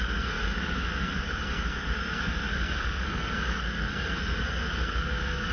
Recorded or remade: remade